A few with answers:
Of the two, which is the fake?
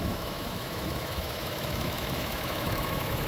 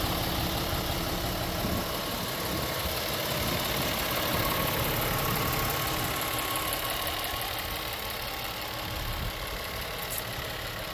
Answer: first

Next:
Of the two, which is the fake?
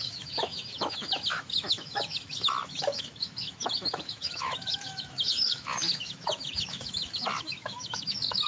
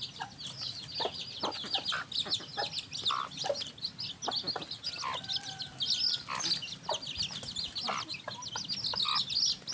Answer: first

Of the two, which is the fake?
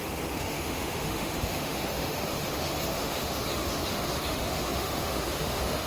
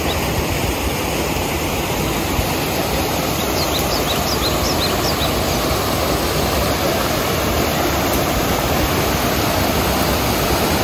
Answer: first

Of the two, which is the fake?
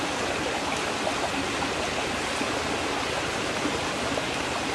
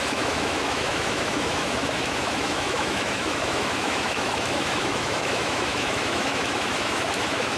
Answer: second